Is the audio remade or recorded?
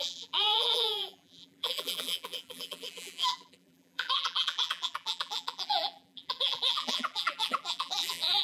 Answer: remade